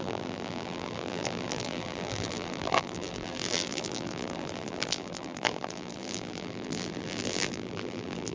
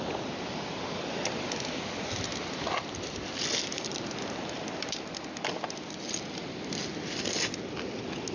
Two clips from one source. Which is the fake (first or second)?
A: first